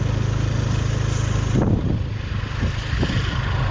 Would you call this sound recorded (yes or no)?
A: yes